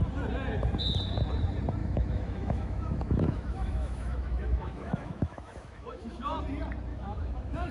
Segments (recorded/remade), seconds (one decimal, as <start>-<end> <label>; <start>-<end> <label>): 0.0-1.8 recorded; 1.8-6.4 remade; 6.4-6.9 recorded; 6.9-7.7 remade